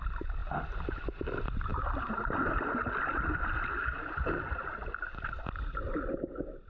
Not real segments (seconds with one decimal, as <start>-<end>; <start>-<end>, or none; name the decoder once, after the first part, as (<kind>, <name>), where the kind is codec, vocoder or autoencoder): 0.0-0.4 (vocoder, BigVGAN v2); 0.9-1.7; 3.0-4.6; 6.1-6.7